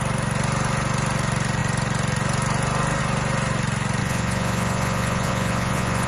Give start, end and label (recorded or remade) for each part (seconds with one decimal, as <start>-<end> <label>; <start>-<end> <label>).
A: 0.0-4.0 recorded; 4.0-6.1 remade